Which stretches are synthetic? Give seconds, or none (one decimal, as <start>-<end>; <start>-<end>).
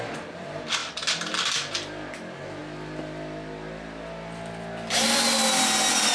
none